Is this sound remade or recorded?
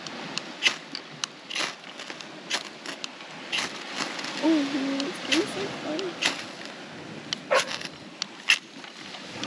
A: recorded